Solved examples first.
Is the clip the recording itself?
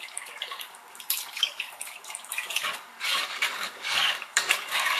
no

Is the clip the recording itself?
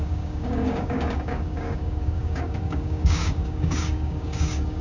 no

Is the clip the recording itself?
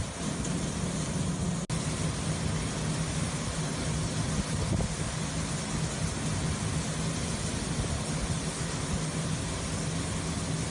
yes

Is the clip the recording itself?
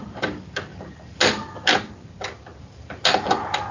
yes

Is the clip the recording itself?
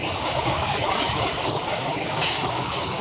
no